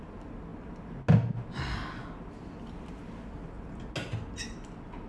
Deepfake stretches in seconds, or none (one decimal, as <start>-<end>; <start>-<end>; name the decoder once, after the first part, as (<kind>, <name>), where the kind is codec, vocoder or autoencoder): none